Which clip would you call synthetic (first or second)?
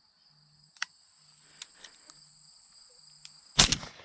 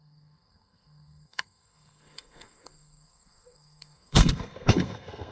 second